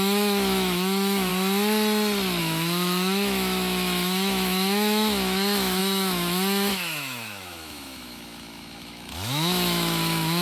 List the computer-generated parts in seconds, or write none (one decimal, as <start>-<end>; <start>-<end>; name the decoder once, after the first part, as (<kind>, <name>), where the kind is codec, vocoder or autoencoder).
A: 0.0-1.3 (autoencoder, DAC-VAE); 2.4-10.4